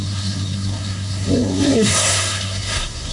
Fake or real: fake